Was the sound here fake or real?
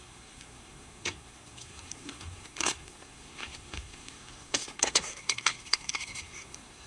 fake